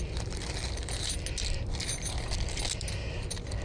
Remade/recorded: recorded